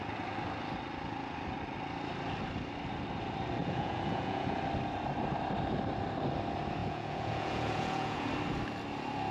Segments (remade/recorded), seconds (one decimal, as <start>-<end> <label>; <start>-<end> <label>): 0.0-3.6 recorded; 3.6-4.6 remade; 4.6-6.8 recorded; 6.8-8.3 remade; 8.3-9.3 recorded